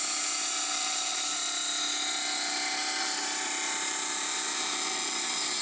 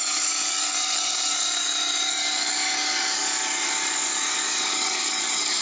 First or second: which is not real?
second